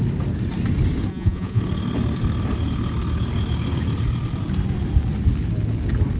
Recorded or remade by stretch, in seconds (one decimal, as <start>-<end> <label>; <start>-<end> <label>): 0.0-1.1 recorded; 1.1-1.6 remade; 1.6-6.2 recorded